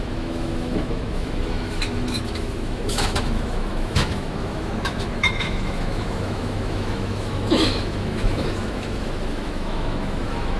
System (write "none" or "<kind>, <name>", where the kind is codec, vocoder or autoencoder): autoencoder, DAC-VAE